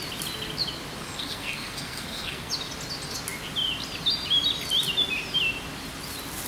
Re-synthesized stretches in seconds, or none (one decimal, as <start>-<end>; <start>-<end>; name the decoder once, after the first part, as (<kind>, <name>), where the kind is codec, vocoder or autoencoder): 1.0-2.5 (codec, SNAC)